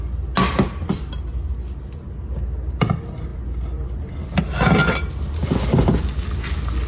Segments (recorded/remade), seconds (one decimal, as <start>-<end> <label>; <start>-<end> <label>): 0.0-6.9 recorded